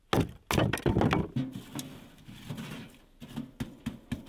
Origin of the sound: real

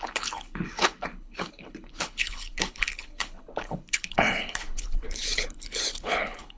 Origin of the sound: fake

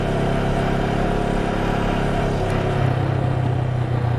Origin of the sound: real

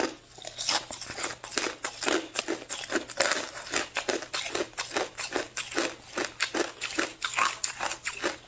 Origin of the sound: real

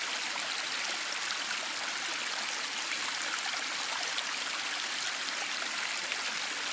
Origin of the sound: real